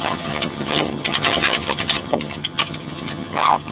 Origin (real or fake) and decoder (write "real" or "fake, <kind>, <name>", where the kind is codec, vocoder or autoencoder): fake, vocoder, HiFi-GAN